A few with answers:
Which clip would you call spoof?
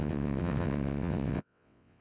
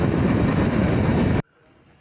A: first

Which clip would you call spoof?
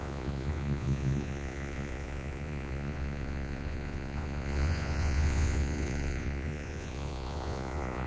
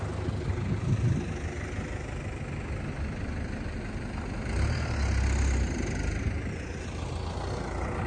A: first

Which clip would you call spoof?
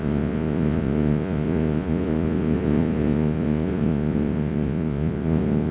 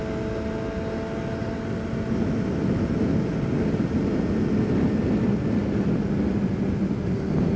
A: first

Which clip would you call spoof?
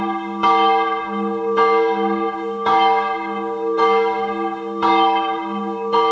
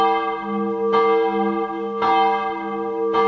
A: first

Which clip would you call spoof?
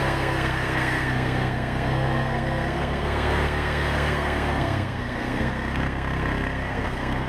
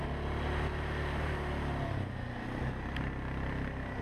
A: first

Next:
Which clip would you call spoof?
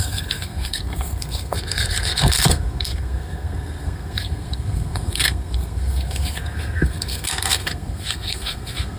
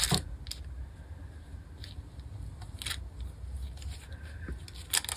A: first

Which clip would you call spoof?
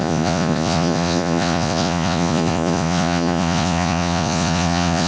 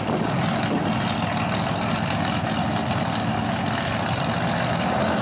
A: first